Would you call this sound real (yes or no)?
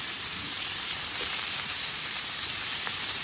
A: no